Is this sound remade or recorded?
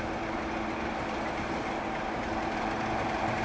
recorded